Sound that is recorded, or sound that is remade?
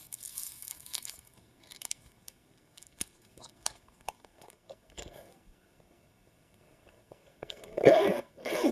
remade